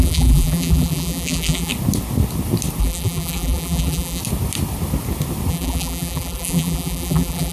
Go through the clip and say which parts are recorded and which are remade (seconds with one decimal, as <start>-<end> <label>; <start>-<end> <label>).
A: 0.0-1.7 remade; 1.7-2.8 recorded; 2.8-4.2 remade; 4.2-5.5 recorded; 5.5-7.5 remade